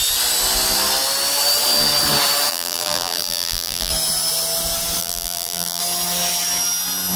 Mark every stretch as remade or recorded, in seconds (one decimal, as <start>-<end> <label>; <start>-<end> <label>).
0.0-2.5 recorded; 2.5-3.9 remade; 3.9-5.0 recorded; 5.0-5.8 remade; 5.8-7.2 recorded